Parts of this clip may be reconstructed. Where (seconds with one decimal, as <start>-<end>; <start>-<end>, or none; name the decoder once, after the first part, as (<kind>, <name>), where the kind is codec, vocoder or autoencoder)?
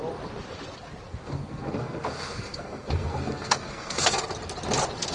1.1-4.2 (codec, SNAC)